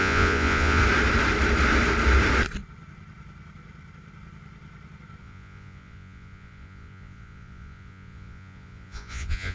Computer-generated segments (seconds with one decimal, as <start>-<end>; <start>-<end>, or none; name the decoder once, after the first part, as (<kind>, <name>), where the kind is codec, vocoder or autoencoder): 0.0-0.8 (vocoder, Vocos); 5.2-9.5